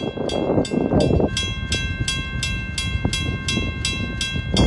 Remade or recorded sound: recorded